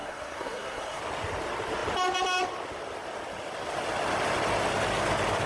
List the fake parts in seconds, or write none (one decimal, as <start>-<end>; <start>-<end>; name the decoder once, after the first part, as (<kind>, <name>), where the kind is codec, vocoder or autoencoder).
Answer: 0.0-1.0 (codec, SNAC)